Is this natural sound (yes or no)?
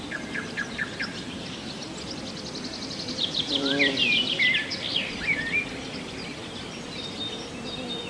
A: yes